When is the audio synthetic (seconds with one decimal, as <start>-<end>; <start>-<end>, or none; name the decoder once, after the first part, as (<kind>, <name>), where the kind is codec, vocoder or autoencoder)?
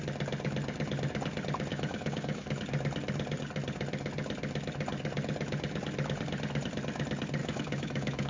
1.7-2.5 (autoencoder, DAC-VAE); 7.4-8.3